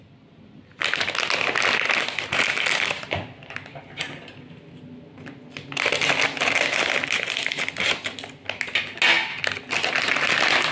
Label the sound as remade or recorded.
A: recorded